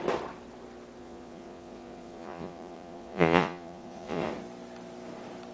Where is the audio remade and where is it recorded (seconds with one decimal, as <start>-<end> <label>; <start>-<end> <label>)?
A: 0.0-1.0 recorded; 1.0-4.3 remade; 4.3-5.5 recorded